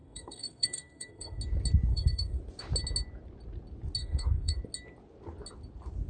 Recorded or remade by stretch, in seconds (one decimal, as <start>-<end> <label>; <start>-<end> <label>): 0.0-1.4 remade; 1.4-1.9 recorded; 1.9-2.4 remade; 2.4-4.0 recorded; 4.0-4.6 remade; 4.6-6.1 recorded